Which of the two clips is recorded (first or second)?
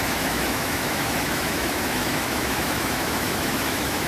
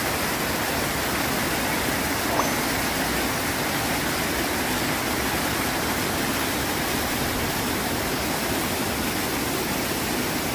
second